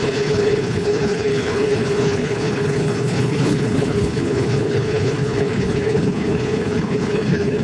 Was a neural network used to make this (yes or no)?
yes